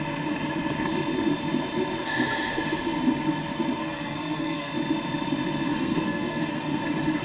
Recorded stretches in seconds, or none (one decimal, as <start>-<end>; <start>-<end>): 0.0-3.8; 4.7-5.7; 6.8-7.2